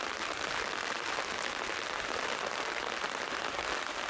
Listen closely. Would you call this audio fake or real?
real